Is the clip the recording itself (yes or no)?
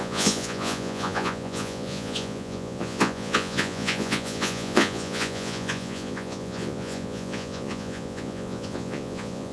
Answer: no